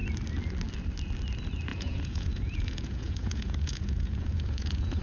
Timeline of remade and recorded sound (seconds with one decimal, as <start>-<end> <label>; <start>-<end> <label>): 0.0-1.7 recorded; 1.7-5.0 remade